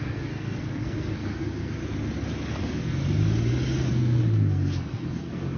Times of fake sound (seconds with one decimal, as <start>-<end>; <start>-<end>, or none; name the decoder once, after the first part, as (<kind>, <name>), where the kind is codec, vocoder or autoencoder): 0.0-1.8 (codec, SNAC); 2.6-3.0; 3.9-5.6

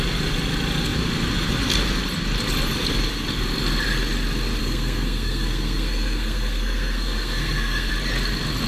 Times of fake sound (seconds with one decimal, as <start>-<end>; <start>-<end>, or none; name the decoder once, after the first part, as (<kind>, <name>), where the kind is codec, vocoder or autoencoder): 4.6-7.9 (codec, SNAC)

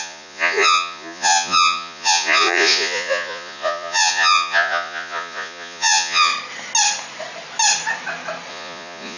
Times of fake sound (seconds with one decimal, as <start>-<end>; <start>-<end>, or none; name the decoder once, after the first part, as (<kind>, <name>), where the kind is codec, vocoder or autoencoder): 0.0-6.3 (vocoder, Vocos); 8.5-9.2

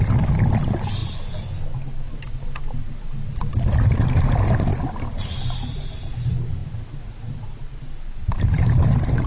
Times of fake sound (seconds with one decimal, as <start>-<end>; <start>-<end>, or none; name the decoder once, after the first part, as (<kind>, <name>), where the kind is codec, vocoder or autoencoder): none

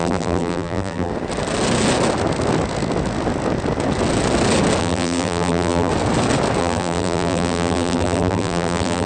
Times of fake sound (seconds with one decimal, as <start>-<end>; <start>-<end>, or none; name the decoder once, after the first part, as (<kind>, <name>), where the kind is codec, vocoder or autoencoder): 0.0-1.1 (vocoder, BigVGAN v2); 4.8-5.9; 6.6-9.1

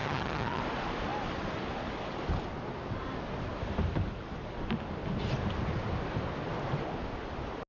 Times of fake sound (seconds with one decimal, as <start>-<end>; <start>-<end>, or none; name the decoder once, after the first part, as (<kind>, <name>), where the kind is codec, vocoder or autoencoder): 0.0-0.6 (vocoder, HiFi-GAN)